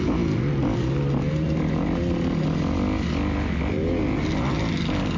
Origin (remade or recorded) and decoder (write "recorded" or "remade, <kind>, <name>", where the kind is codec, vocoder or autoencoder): recorded